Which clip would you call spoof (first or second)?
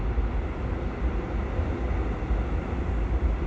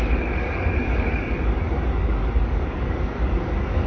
second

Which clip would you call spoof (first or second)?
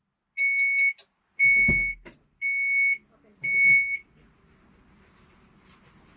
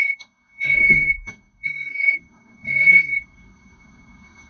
second